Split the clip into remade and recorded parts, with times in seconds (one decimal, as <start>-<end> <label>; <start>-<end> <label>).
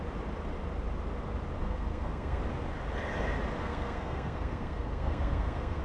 0.0-1.6 recorded; 1.6-2.4 remade; 2.4-3.6 recorded; 3.6-5.8 remade